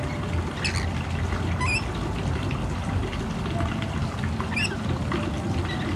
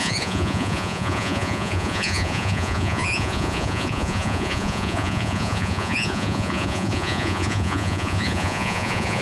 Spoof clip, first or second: second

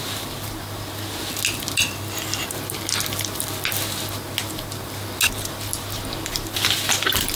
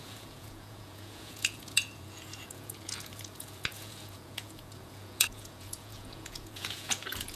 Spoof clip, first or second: second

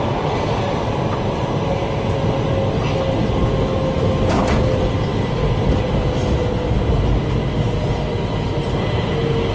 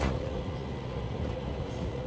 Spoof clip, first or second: second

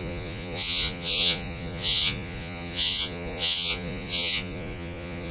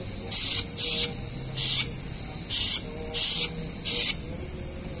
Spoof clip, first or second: first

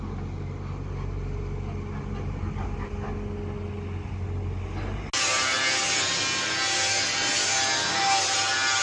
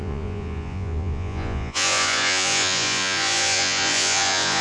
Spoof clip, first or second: second